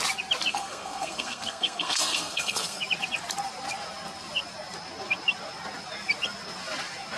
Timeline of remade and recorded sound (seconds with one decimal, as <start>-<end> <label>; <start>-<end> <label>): 0.0-0.5 recorded; 0.5-2.8 remade; 2.8-7.2 recorded